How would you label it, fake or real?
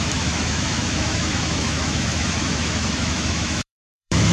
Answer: fake